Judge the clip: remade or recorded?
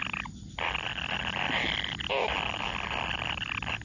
recorded